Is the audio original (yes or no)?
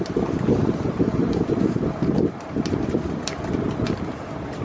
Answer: no